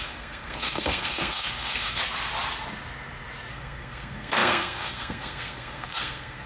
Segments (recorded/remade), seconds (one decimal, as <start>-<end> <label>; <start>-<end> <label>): 0.0-2.0 remade; 2.0-3.5 recorded; 3.5-6.5 remade